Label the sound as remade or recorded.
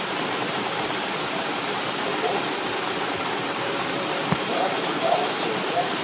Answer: remade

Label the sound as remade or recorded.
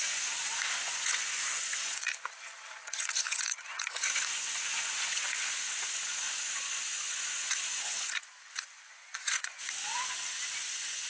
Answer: remade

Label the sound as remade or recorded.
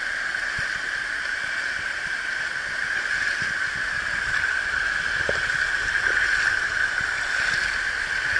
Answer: recorded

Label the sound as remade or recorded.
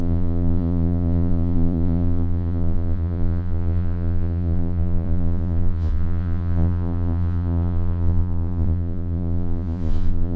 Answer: remade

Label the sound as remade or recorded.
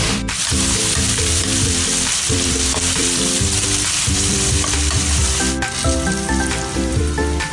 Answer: remade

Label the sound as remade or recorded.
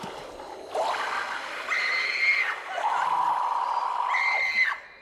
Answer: recorded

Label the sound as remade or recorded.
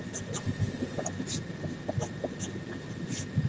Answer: recorded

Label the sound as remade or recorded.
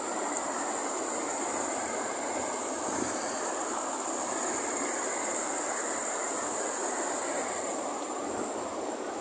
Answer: remade